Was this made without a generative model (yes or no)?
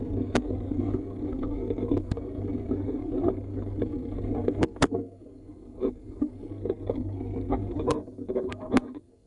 no